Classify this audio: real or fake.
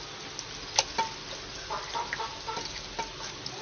real